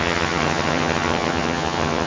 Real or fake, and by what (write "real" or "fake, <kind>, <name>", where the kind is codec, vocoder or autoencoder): fake, vocoder, HiFi-GAN